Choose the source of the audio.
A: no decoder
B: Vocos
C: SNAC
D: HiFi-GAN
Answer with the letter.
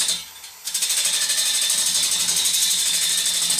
A